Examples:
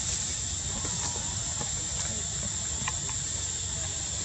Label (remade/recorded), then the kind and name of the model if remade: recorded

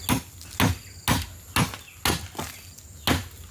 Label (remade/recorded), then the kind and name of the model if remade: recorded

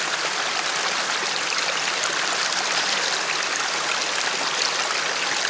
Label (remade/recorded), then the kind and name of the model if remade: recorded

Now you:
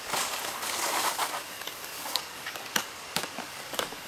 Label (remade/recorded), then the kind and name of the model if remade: remade, codec, DAC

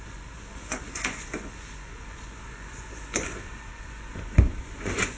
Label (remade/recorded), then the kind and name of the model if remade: remade, vocoder, Vocos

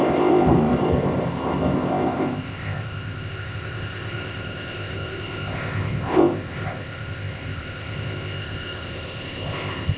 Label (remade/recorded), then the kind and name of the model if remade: remade, codec, ZipCodec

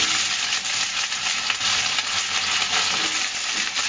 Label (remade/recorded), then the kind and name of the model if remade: recorded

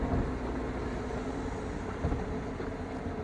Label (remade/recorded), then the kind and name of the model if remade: recorded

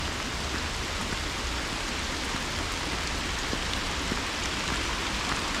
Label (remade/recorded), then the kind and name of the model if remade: recorded